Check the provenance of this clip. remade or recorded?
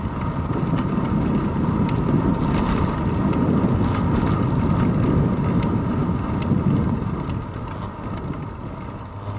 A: recorded